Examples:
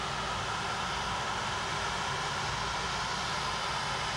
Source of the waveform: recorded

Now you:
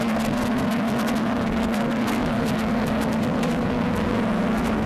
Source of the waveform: remade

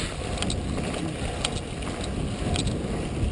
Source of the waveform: recorded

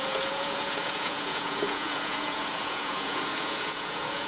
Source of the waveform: remade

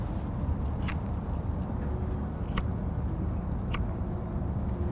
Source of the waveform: recorded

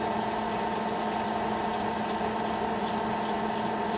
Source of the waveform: recorded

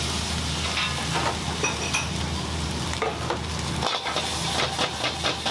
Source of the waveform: recorded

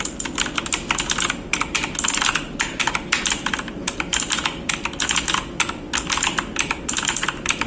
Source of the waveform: recorded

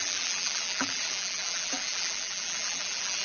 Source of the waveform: remade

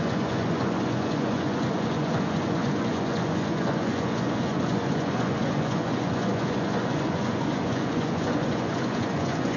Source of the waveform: remade